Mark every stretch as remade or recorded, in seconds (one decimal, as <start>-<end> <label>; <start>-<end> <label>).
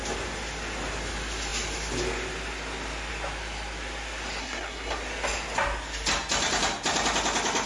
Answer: 0.0-4.4 recorded; 4.4-5.0 remade; 5.0-7.7 recorded